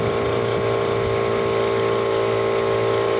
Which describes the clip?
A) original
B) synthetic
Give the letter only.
A